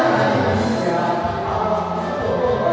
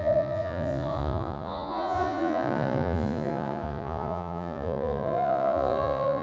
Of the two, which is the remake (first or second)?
second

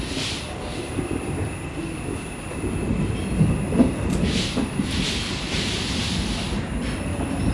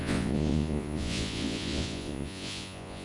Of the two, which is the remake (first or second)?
second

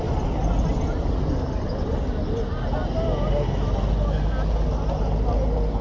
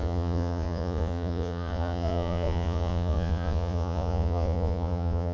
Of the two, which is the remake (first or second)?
second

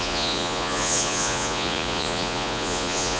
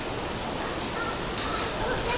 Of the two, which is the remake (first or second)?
first